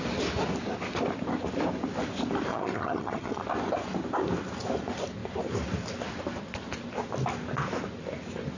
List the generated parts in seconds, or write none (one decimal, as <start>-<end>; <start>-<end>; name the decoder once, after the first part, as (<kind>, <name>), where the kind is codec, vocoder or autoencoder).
2.5-3.4 (vocoder, HiFi-GAN)